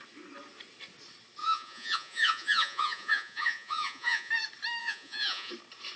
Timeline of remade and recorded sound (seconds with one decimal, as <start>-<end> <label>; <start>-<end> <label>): 0.0-1.4 recorded; 1.4-4.3 remade; 4.3-4.8 recorded; 4.8-5.5 remade; 5.5-6.0 recorded